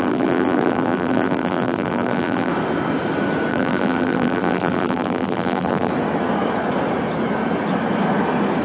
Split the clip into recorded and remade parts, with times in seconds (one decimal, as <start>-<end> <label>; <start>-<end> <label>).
0.0-2.5 remade; 2.5-3.5 recorded; 3.5-5.9 remade; 5.9-8.6 recorded